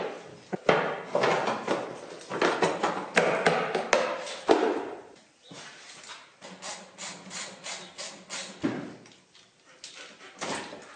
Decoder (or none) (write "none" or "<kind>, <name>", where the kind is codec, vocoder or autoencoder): none